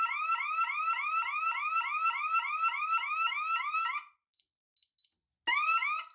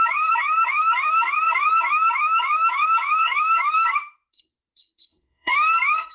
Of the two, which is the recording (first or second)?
first